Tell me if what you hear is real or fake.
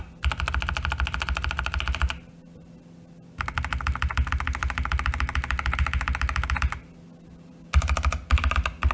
real